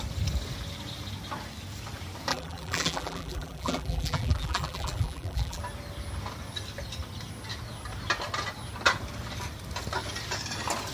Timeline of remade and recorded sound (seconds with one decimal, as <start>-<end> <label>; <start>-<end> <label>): 0.0-2.3 recorded; 2.3-5.6 remade; 5.6-10.9 recorded